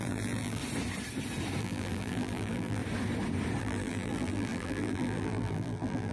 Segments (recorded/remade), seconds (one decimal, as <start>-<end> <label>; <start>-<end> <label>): 0.0-0.6 remade; 0.6-1.6 recorded; 1.6-2.8 remade; 2.8-3.6 recorded; 3.6-6.1 remade